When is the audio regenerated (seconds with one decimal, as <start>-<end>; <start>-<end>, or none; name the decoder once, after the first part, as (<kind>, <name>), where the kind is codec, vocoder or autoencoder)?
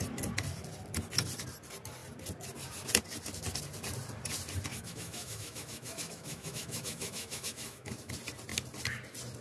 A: 4.7-8.1 (autoencoder, DAC-VAE)